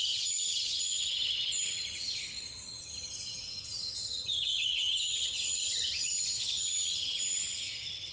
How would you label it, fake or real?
fake